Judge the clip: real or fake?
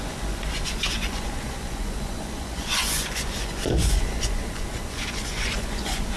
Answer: fake